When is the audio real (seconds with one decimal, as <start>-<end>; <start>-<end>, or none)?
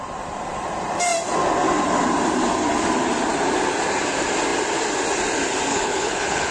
0.0-5.7